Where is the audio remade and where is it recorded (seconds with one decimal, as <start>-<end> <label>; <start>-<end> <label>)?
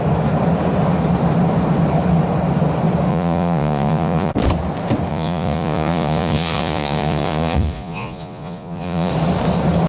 0.0-3.1 recorded; 3.1-4.3 remade; 4.3-5.1 recorded; 5.1-9.1 remade; 9.1-9.9 recorded